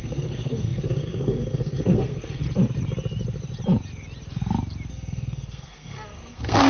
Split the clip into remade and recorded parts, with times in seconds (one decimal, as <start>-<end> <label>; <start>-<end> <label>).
0.0-2.4 remade; 2.4-4.9 recorded; 4.9-6.7 remade